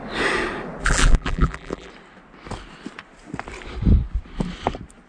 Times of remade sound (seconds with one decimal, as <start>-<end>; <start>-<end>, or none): 0.8-1.9